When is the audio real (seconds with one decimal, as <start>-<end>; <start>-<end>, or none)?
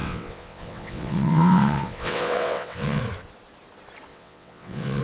3.0-4.1